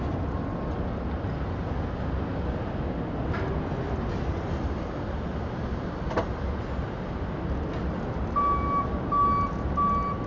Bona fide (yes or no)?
yes